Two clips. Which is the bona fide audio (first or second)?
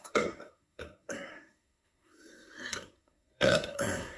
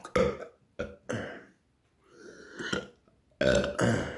second